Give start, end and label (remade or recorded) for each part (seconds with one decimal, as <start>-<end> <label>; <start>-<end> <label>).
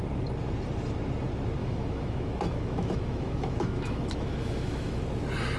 0.0-1.6 recorded; 1.6-5.0 remade; 5.0-5.6 recorded